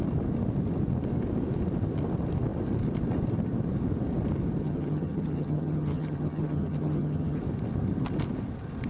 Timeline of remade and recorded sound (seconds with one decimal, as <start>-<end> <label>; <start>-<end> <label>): 0.0-4.6 recorded; 4.6-7.4 remade; 7.4-8.9 recorded